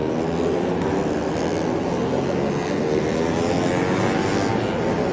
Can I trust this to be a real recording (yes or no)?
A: yes